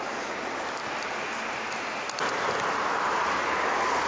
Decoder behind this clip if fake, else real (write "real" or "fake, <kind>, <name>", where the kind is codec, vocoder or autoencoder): real